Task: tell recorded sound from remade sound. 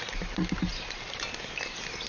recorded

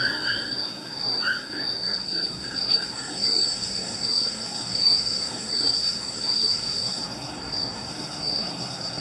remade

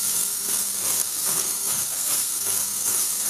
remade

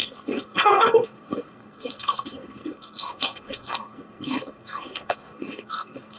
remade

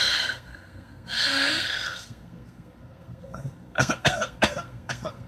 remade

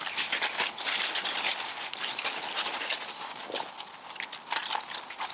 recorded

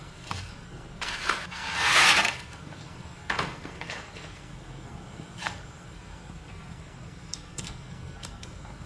remade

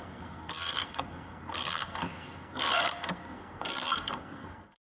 remade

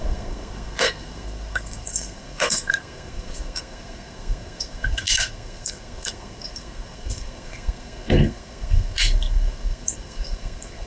remade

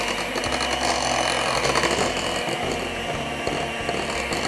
recorded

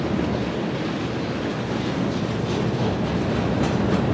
recorded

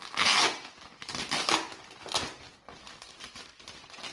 recorded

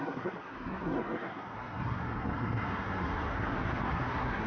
remade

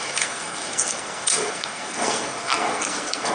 remade